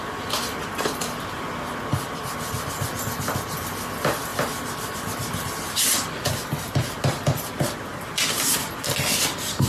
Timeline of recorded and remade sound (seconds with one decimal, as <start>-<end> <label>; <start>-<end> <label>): 0.0-9.7 recorded